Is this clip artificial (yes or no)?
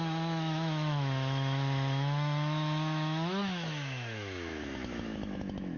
yes